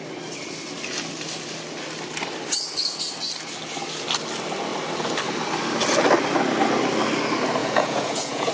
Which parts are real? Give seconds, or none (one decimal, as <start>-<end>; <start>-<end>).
0.0-7.6